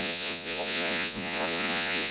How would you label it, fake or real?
fake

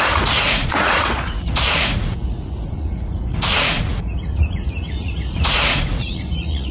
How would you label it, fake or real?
fake